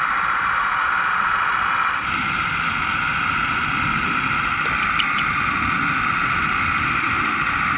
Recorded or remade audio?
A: remade